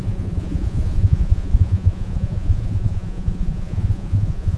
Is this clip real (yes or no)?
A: no